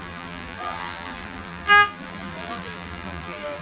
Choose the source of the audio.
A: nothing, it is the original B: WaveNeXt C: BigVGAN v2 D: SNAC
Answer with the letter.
C